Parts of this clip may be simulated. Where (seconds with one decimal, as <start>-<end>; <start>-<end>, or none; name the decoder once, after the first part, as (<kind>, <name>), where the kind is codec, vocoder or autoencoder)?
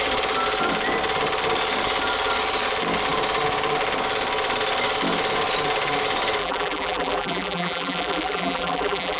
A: 6.4-9.2 (vocoder, BigVGAN v2)